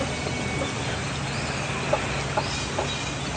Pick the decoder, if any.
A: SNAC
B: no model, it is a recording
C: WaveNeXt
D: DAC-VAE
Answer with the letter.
B